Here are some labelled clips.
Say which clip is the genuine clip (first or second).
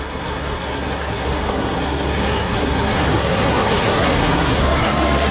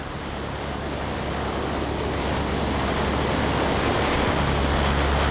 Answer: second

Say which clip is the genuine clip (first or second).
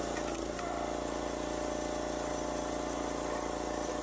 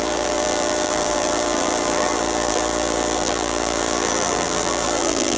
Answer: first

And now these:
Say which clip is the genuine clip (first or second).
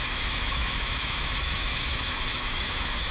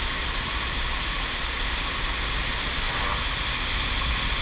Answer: second